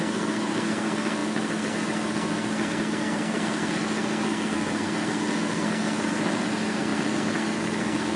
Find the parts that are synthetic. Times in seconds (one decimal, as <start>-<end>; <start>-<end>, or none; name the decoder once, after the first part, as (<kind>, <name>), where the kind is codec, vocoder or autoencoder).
0.0-8.2 (codec, SNAC)